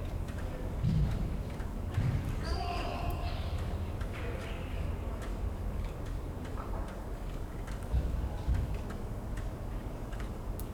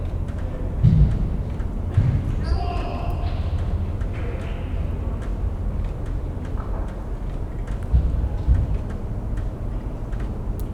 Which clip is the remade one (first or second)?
first